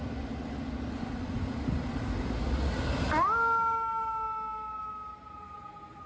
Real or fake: real